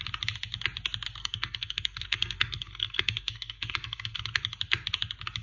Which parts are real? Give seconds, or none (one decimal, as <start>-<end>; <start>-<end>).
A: 0.0-1.2; 4.4-5.4